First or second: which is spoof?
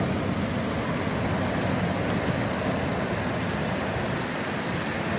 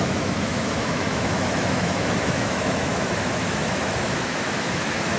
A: second